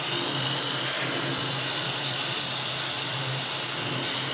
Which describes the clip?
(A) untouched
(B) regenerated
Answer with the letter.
A